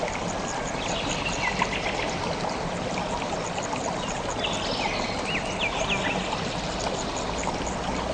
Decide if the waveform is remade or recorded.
recorded